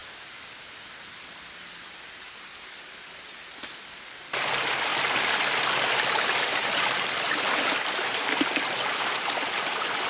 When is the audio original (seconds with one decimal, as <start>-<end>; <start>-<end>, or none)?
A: 4.9-8.9